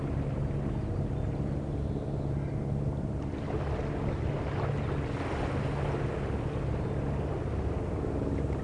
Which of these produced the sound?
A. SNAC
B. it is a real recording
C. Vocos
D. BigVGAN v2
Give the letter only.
B